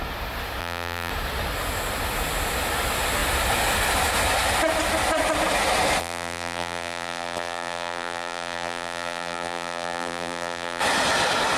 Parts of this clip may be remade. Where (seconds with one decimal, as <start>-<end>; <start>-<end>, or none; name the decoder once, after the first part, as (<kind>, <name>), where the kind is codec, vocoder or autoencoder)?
0.6-1.1 (vocoder, BigVGAN v2); 6.0-10.8